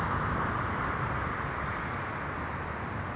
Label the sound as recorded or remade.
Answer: recorded